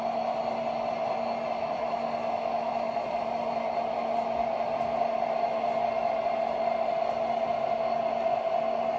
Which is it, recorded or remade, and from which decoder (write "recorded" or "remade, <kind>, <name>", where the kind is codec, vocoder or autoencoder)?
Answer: recorded